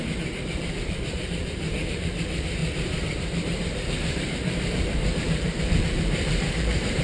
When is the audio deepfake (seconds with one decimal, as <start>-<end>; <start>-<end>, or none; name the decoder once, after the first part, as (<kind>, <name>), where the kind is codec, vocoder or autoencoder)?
0.0-7.0 (vocoder, BigVGAN v2)